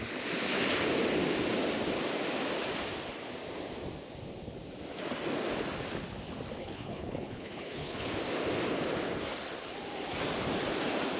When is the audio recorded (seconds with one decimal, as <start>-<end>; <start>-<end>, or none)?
0.0-6.6; 8.1-11.2